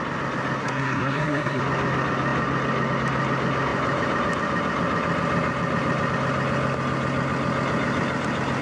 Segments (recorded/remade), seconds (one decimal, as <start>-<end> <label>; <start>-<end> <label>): 0.0-0.6 recorded; 0.6-1.6 remade; 1.6-8.6 recorded